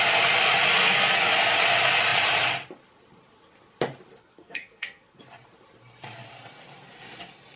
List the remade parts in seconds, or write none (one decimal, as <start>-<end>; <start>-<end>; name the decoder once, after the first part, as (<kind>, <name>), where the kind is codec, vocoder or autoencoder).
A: 4.2-5.2 (codec, SNAC)